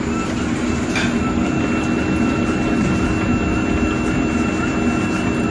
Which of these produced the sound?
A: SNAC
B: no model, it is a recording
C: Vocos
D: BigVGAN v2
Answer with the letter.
B